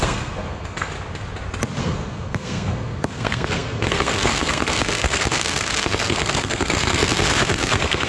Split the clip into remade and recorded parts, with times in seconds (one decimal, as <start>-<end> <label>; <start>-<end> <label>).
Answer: 0.0-0.9 remade; 0.9-1.8 recorded; 1.8-8.1 remade